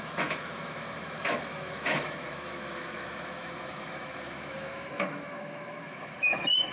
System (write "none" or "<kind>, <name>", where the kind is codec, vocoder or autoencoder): autoencoder, DAC-VAE